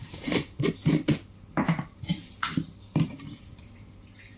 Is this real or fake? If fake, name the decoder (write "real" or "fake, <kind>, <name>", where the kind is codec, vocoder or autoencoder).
fake, vocoder, BigVGAN v2